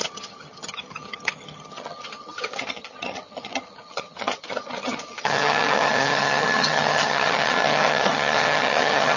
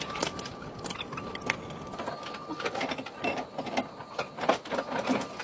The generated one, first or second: first